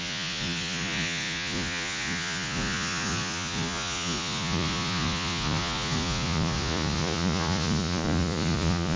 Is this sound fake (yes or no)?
yes